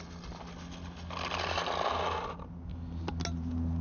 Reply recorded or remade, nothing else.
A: recorded